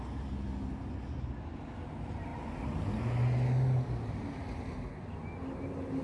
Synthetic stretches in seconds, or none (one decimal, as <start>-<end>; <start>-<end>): none